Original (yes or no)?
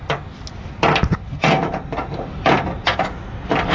yes